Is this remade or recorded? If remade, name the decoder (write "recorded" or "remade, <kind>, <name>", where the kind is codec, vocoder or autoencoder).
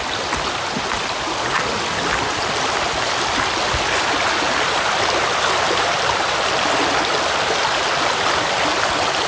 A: recorded